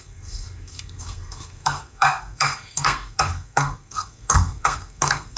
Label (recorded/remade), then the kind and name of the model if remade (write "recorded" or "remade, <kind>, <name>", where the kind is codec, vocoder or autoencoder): remade, codec, SNAC